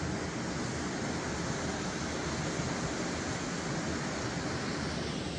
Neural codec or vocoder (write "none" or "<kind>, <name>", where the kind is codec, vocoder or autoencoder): none